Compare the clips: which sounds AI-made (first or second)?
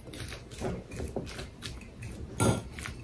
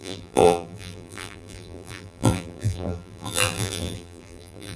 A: second